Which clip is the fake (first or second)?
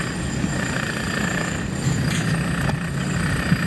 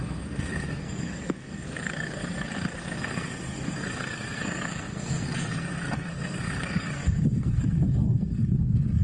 second